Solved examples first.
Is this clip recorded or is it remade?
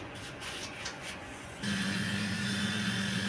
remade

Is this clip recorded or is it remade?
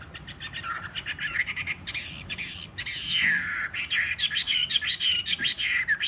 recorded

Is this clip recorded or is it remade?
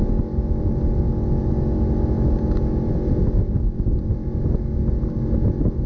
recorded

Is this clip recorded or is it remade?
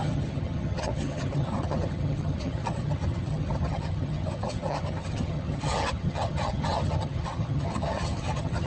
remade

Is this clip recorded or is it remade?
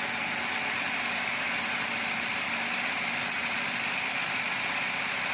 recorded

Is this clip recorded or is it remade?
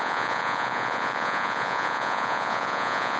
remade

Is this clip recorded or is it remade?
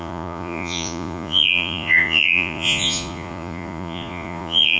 remade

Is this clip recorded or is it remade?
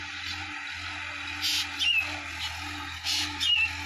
recorded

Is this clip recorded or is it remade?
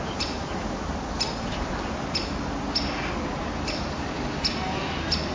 recorded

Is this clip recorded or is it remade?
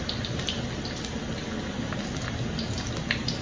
recorded